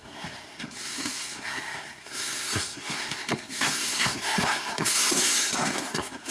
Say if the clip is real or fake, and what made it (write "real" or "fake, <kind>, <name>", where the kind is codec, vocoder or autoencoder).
fake, codec, SNAC